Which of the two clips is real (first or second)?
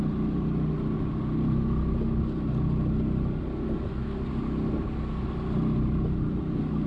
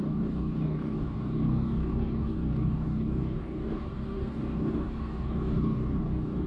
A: first